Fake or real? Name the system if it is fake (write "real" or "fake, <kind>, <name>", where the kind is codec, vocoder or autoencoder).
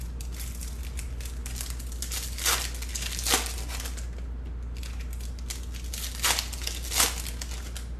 real